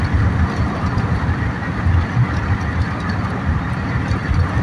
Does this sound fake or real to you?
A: real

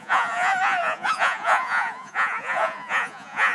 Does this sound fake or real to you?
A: fake